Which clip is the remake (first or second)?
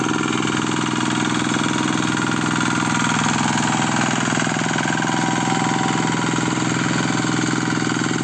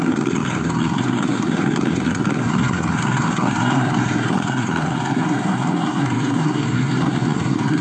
second